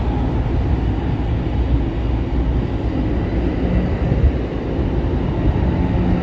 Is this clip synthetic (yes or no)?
no